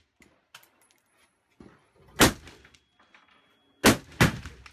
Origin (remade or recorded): recorded